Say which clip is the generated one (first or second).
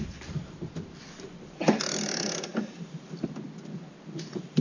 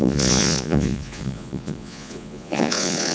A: second